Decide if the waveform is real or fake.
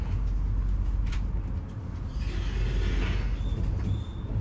real